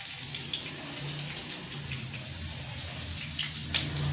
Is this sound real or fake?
real